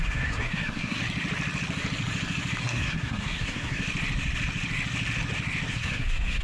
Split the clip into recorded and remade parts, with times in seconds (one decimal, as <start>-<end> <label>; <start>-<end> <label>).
0.0-1.0 remade; 1.0-2.6 recorded; 2.6-3.8 remade; 3.8-5.7 recorded; 5.7-6.4 remade